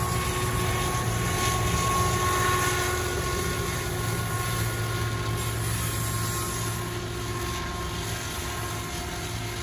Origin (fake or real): real